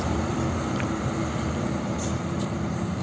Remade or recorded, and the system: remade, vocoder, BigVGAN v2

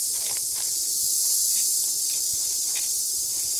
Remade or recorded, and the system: remade, vocoder, BigVGAN v2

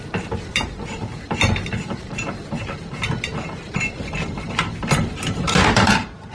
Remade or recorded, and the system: remade, vocoder, BigVGAN v2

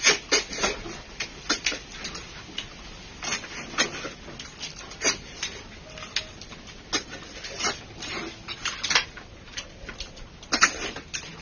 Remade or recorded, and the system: recorded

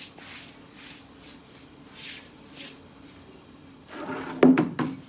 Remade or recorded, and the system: recorded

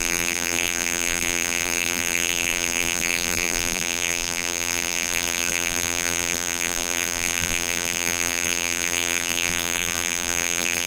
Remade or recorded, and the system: remade, vocoder, BigVGAN v2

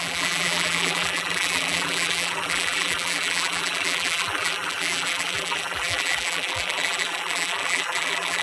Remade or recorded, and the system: remade, vocoder, BigVGAN v2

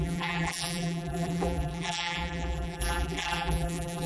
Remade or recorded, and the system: remade, vocoder, BigVGAN v2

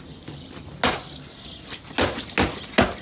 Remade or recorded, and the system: recorded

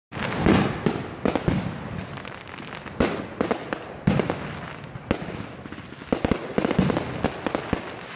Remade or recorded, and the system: recorded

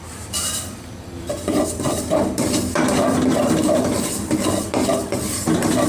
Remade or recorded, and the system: remade, vocoder, BigVGAN v2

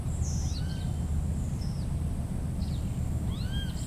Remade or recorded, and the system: recorded